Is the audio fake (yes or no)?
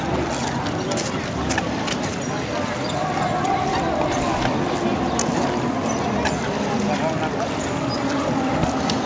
no